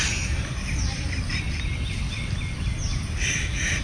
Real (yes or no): yes